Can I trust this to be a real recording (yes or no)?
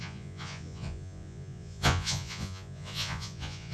no